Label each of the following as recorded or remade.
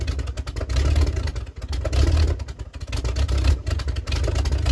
recorded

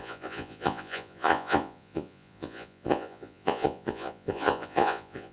remade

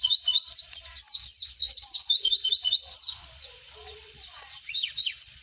remade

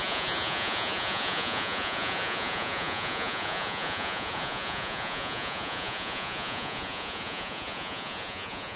remade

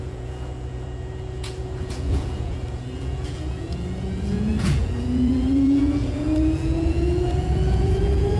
remade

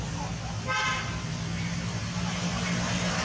recorded